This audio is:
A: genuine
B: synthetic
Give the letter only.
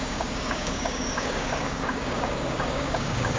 B